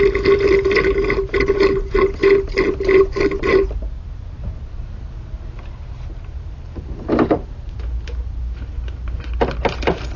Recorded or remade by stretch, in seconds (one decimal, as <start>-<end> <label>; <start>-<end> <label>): 0.0-10.2 recorded